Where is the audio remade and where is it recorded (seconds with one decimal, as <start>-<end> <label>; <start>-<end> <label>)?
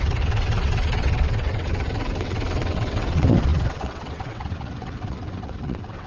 0.0-6.1 remade